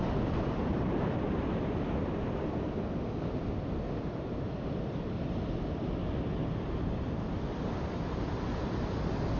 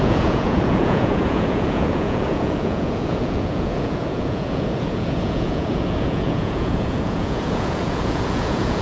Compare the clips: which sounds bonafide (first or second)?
first